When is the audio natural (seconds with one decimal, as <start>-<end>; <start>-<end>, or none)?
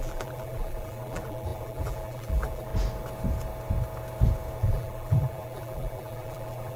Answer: 2.7-4.6